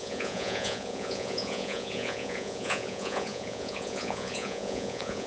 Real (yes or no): no